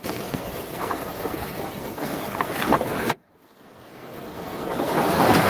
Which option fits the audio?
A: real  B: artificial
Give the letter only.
B